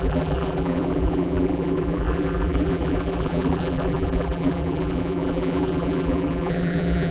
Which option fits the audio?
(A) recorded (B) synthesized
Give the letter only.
B